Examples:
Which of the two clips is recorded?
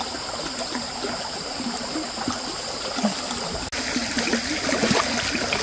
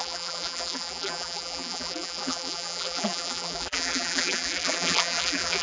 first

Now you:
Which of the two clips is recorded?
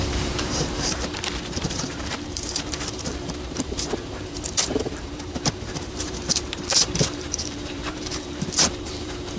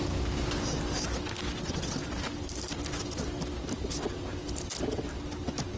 second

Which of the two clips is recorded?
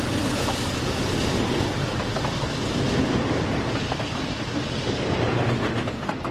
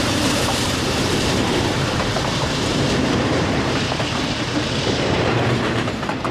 first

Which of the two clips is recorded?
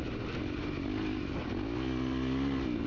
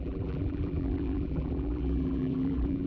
first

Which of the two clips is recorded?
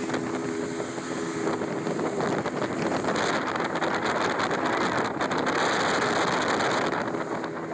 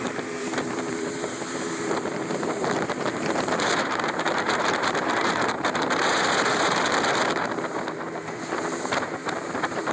first